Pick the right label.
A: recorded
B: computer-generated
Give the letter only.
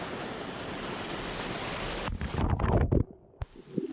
A